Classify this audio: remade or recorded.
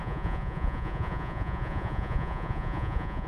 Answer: remade